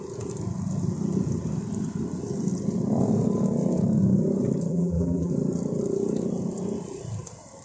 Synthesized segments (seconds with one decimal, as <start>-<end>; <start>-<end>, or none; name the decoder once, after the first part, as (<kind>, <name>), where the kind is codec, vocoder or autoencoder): 4.7-5.3 (vocoder, BigVGAN v2)